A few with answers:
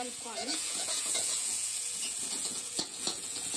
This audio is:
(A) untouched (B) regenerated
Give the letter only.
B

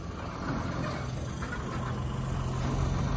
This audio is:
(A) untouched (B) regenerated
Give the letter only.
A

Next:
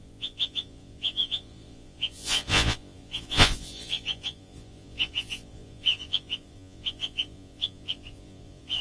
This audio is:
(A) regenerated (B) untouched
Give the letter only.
A